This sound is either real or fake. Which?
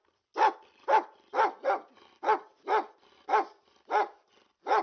real